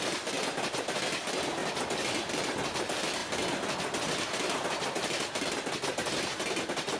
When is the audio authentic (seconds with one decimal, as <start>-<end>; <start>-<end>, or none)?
3.2-7.0